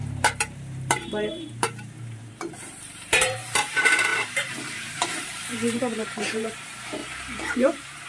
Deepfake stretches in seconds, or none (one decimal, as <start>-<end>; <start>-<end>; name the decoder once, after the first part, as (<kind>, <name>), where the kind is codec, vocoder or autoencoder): 0.0-7.0 (vocoder, BigVGAN v2); 7.5-8.1